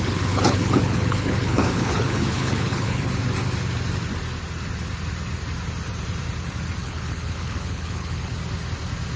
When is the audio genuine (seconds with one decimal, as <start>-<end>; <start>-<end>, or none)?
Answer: 3.1-6.8; 8.3-9.2